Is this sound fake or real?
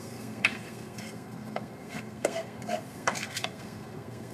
fake